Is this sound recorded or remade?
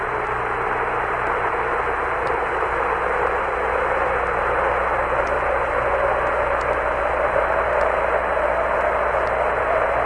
recorded